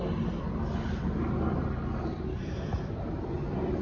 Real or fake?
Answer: fake